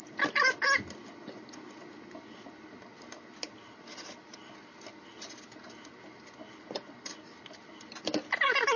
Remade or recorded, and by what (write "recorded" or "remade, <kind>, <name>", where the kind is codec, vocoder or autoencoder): recorded